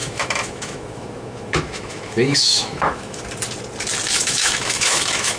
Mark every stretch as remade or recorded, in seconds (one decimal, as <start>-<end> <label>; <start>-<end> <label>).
0.0-3.2 remade; 3.2-4.2 recorded; 4.2-5.4 remade